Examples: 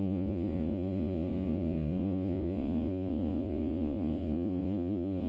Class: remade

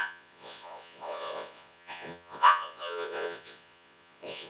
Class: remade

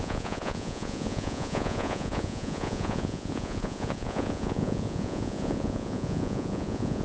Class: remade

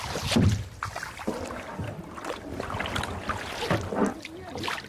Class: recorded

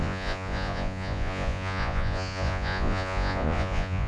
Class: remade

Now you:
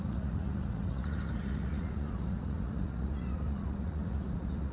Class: remade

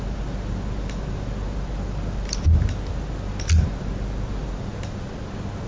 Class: recorded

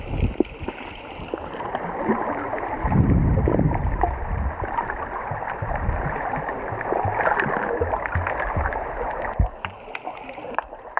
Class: recorded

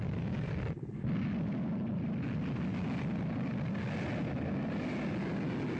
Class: recorded